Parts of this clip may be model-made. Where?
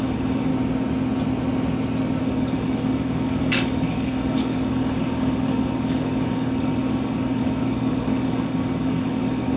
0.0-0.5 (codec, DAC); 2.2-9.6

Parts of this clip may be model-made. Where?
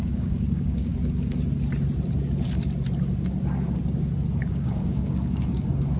0.0-0.9 (codec, DAC); 4.5-6.0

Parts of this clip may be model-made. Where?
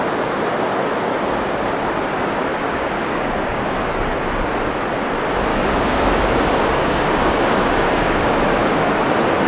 2.5-3.9 (codec, DAC); 5.5-8.9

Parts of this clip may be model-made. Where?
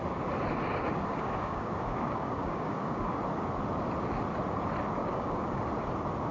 1.1-3.2 (codec, DAC); 5.0-5.6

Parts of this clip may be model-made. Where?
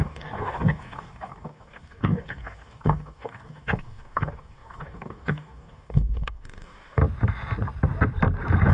0.0-7.0 (codec, DAC)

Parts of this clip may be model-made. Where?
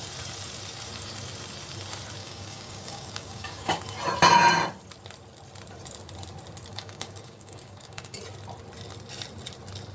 2.2-3.8 (codec, DAC); 6.7-8.2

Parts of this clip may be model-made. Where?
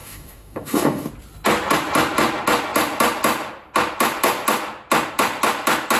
0.0-1.1 (codec, DAC)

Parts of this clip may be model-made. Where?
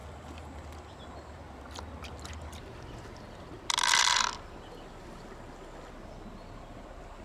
none